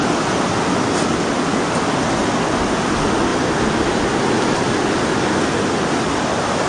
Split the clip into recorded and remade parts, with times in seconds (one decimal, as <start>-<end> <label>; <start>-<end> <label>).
0.0-6.7 recorded